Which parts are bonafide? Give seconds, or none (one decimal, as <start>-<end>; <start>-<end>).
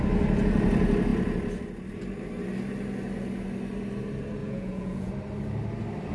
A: 0.0-4.4; 5.1-6.1